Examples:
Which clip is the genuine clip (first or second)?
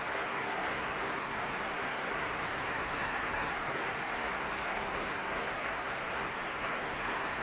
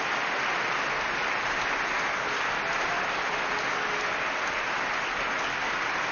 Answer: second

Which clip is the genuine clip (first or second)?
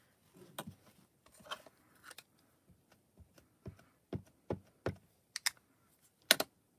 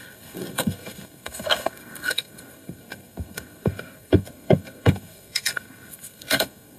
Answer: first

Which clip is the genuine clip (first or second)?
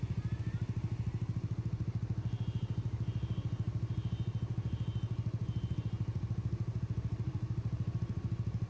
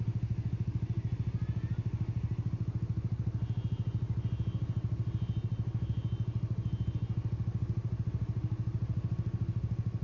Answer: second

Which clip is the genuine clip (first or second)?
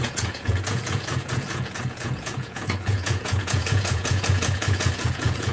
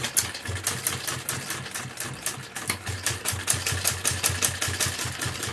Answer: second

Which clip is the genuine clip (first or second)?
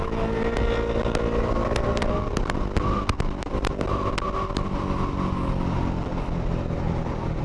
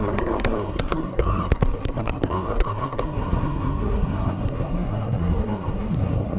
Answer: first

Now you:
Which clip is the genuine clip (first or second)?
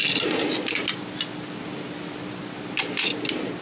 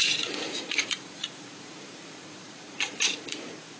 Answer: first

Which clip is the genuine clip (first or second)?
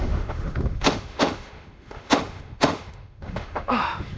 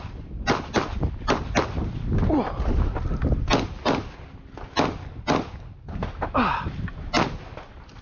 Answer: second